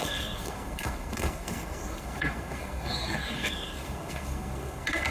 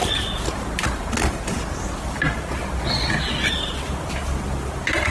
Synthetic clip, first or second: first